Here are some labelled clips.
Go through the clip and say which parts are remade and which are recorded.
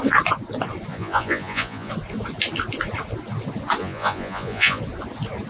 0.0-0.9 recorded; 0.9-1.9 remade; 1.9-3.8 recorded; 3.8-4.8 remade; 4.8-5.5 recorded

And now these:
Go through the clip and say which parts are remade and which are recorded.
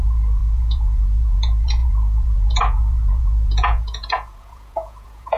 0.0-5.4 remade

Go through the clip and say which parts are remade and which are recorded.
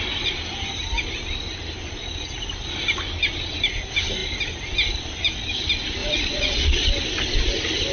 0.0-6.0 recorded; 6.0-6.9 remade; 6.9-7.9 recorded